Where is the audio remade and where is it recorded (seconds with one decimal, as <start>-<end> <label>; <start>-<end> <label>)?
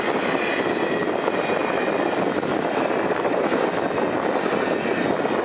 0.0-5.4 recorded